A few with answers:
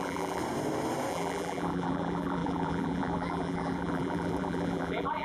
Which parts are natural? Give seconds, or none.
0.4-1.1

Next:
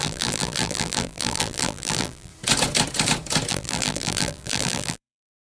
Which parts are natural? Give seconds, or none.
2.3-3.5

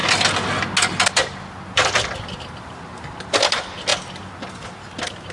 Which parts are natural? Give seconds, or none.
0.0-5.3

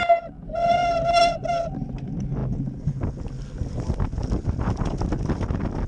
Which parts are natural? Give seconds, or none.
0.0-5.9